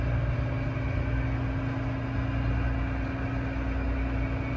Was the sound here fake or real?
real